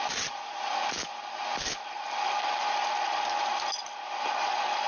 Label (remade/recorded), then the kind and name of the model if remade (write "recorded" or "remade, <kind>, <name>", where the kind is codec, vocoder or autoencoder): recorded